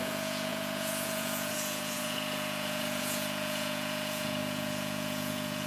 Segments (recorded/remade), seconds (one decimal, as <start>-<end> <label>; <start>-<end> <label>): 0.0-5.7 remade